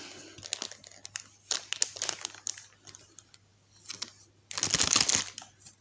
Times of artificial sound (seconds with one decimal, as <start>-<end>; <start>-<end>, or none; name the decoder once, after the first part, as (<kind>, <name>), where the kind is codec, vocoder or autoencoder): none